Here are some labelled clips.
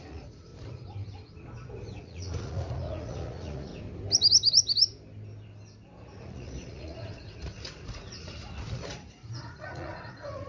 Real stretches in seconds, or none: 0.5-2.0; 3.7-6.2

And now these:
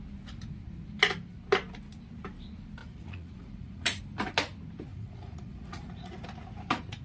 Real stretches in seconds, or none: 0.0-2.8; 4.0-4.9; 6.2-7.0

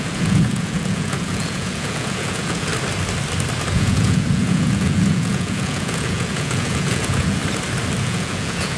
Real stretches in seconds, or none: 2.7-3.7; 7.4-8.0

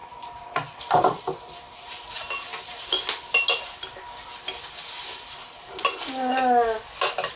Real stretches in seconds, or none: 0.0-7.4

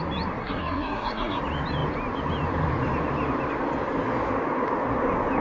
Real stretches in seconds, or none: 0.0-0.4; 1.4-5.4

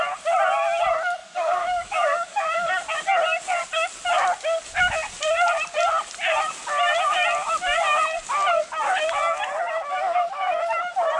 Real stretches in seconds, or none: 0.0-1.2; 2.7-11.2

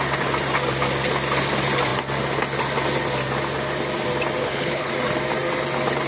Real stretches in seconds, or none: 0.0-4.4; 4.9-6.1